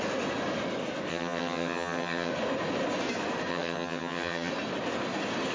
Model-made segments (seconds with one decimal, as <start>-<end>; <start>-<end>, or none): 1.1-2.3; 3.5-4.5